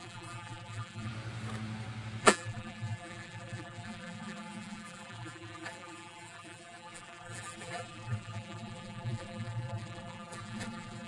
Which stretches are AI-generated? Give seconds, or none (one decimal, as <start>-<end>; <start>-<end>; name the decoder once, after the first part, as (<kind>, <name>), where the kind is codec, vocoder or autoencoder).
0.0-1.1 (vocoder, BigVGAN v2); 2.2-11.1